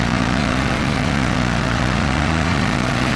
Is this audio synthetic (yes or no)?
yes